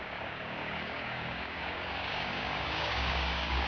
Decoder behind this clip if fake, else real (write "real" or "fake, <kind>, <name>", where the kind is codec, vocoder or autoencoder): fake, codec, DAC